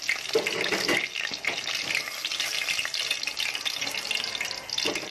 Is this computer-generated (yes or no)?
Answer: no